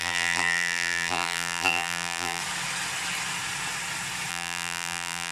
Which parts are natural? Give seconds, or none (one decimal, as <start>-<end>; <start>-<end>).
2.4-4.3